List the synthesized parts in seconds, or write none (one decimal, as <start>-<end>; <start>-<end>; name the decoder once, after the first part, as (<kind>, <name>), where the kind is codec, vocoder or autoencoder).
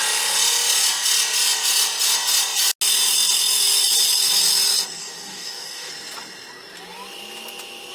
5.0-5.9 (codec, DAC)